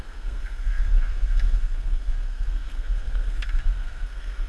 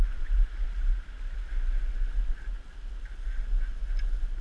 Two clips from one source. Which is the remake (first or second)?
first